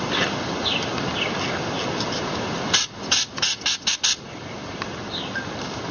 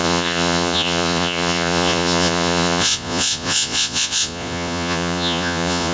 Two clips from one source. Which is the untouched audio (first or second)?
first